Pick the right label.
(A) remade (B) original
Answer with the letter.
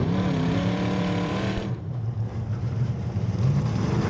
A